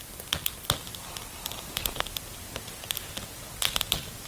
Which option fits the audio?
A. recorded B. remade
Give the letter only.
A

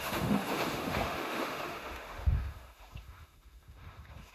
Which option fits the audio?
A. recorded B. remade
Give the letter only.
B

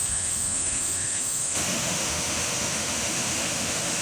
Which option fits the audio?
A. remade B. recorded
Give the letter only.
A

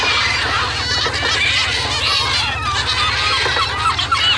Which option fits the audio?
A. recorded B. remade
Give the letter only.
A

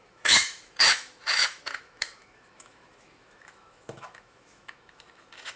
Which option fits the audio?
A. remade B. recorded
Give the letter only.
A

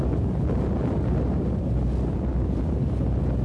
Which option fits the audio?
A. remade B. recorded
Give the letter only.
B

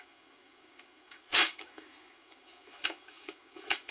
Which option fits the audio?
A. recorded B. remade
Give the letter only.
B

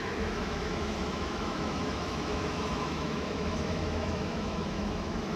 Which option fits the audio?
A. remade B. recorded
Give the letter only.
A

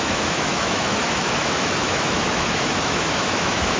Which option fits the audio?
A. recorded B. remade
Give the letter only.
B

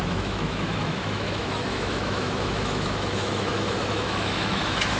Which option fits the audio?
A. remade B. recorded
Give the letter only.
A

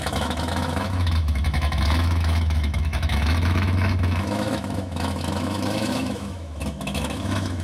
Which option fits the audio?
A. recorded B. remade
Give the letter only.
B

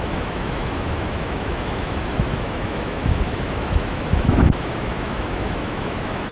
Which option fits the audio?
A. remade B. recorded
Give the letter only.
A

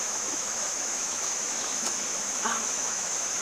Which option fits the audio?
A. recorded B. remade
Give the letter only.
B